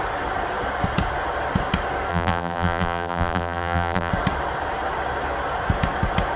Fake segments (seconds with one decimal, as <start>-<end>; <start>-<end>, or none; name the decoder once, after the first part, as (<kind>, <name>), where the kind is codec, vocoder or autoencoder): 2.1-4.1 (vocoder, BigVGAN v2)